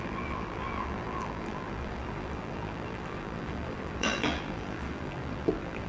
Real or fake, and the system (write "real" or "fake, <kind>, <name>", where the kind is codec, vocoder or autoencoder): fake, vocoder, BigVGAN v2